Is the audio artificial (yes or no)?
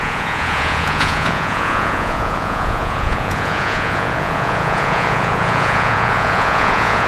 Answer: yes